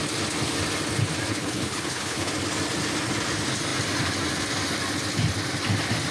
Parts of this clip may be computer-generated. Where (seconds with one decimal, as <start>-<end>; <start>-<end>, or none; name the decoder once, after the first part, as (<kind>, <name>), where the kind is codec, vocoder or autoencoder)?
1.3-2.3 (codec, HILCodec)